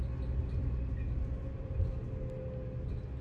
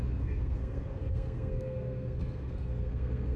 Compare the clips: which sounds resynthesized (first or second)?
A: second